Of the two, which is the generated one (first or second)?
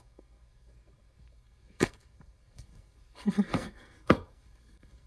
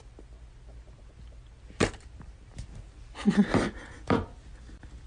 first